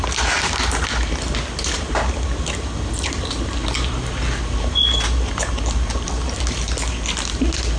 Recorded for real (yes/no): yes